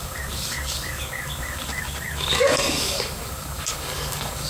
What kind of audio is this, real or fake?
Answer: fake